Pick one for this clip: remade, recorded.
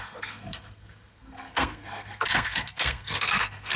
remade